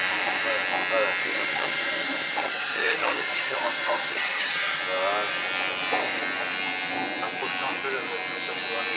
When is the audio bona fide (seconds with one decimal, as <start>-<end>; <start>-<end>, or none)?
0.0-1.2; 4.8-9.0

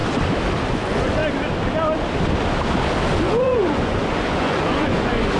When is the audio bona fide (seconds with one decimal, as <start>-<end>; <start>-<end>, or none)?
0.0-0.7; 1.2-3.2

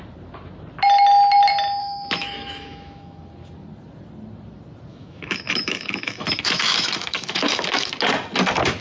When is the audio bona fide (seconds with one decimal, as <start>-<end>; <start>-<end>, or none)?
0.0-1.8; 3.2-4.9; 7.9-8.8

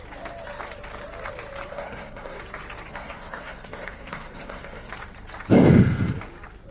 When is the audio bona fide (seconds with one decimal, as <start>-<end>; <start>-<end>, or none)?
0.0-1.7; 2.4-2.9; 4.9-6.7

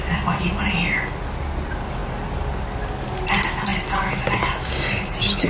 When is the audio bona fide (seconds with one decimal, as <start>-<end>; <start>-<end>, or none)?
0.0-5.5

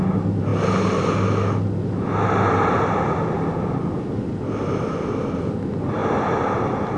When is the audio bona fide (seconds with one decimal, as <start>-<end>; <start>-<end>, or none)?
0.0-7.0

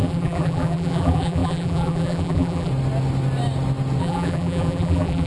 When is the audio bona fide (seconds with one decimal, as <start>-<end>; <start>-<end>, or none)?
2.7-4.0